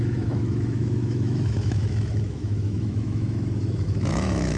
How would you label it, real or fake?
fake